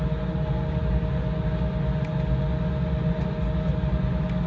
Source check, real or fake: real